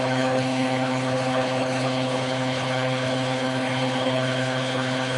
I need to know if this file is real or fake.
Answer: fake